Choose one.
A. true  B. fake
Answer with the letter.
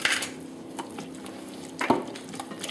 B